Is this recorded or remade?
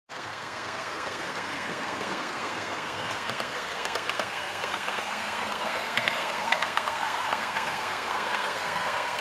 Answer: remade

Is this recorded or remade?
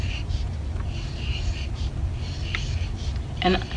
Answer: recorded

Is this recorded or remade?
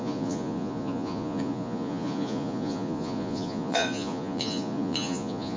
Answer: remade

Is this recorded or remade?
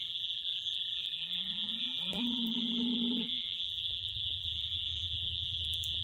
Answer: remade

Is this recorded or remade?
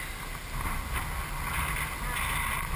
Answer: recorded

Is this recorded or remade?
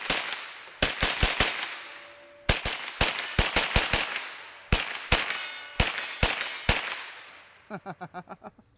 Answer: recorded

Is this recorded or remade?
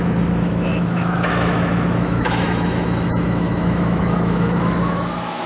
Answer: remade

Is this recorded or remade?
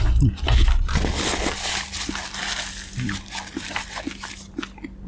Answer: recorded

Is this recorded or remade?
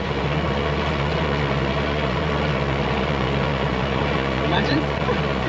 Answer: remade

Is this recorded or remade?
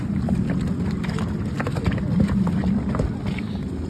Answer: recorded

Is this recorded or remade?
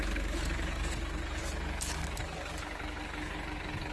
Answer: remade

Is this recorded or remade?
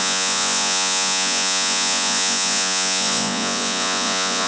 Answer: remade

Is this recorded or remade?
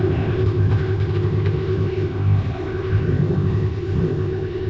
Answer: remade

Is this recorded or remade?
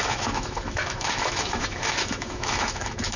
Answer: remade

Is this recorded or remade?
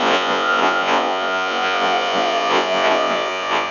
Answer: remade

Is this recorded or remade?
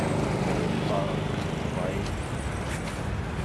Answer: recorded